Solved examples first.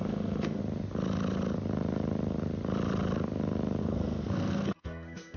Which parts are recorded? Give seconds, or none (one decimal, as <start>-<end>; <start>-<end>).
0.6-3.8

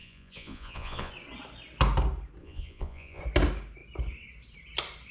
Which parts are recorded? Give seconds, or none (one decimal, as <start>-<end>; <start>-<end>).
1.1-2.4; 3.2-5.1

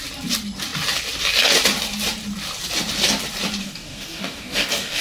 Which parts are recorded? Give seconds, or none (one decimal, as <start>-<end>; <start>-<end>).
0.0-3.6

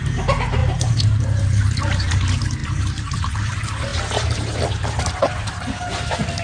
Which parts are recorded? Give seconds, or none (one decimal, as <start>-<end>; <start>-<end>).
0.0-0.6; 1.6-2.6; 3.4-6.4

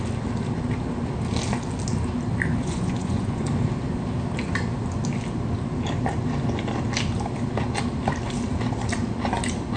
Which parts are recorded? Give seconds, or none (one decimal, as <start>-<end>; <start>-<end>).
0.0-2.6; 3.5-9.8